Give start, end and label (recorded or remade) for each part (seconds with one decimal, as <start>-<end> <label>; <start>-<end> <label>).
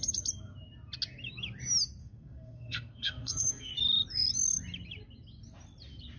0.0-2.0 recorded; 2.0-3.7 remade; 3.7-6.2 recorded